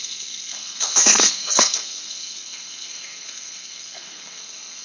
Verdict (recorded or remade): remade